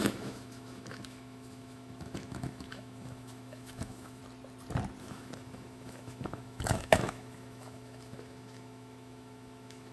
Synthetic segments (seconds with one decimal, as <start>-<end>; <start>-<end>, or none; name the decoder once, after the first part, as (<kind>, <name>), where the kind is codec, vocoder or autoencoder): 0.0-4.2 (autoencoder, DAC-VAE); 5.0-9.9